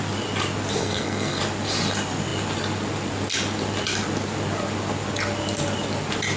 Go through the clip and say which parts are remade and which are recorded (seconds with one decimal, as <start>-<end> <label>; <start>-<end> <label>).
0.0-0.8 recorded; 0.8-1.4 remade; 1.4-6.4 recorded